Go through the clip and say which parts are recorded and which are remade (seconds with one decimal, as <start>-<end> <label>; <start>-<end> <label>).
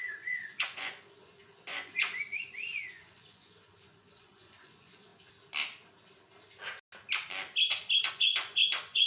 0.0-5.1 remade; 5.1-8.1 recorded; 8.1-9.1 remade